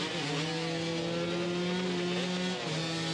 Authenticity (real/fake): real